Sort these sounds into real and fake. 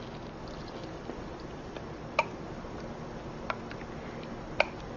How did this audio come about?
real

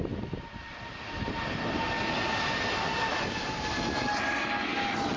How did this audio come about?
real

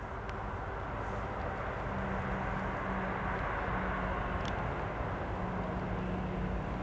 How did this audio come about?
real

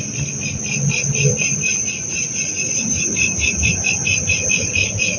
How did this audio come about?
real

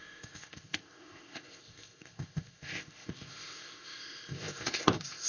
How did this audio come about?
fake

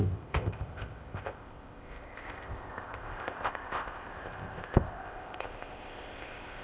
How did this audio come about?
fake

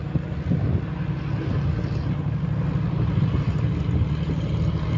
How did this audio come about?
real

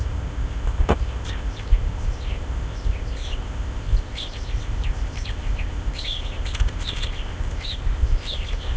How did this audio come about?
fake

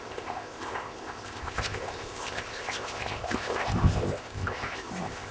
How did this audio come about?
fake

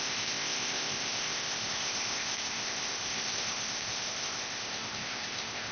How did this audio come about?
fake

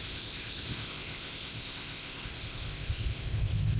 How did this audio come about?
fake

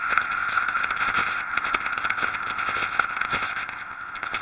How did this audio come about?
fake